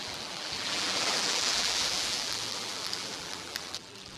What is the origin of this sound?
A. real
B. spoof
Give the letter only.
B